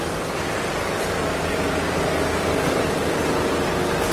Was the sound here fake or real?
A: real